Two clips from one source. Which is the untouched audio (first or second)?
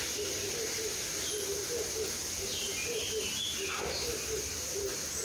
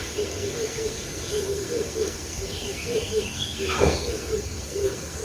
first